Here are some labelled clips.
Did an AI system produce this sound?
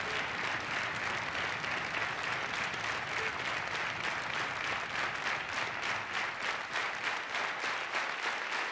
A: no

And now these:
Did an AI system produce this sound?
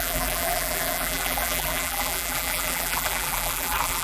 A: yes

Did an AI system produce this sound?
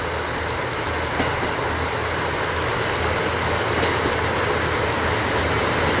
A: no